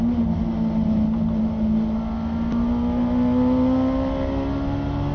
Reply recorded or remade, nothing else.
recorded